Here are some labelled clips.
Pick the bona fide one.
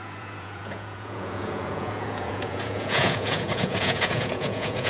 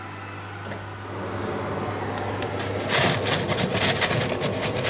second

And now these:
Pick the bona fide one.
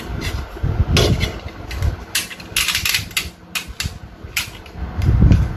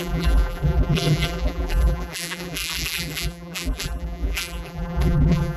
first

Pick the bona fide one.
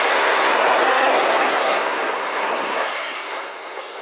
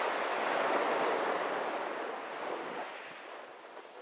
second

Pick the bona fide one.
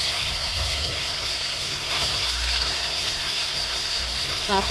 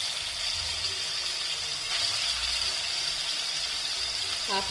second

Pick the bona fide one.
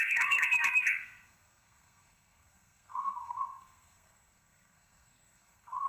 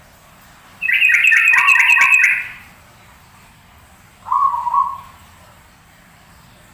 second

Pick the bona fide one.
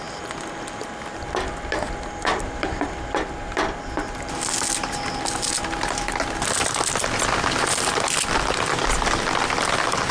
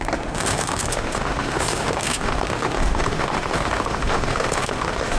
first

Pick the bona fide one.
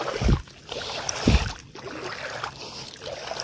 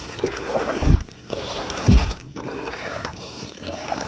first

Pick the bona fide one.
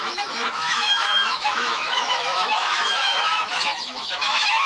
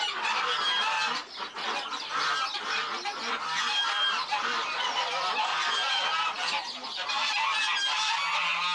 second